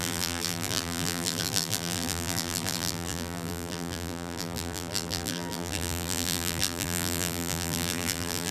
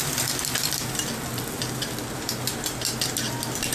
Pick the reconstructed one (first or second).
first